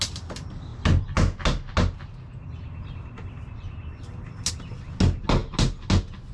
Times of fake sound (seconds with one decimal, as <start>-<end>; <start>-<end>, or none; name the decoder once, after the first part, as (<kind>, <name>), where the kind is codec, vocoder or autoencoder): none